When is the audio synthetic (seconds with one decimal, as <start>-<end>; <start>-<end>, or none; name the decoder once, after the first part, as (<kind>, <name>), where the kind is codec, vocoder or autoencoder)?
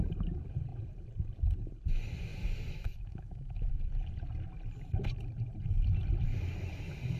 2.3-3.7 (autoencoder, DAC-VAE)